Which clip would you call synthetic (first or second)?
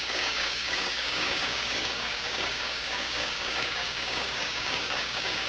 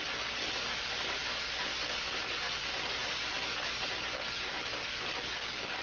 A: first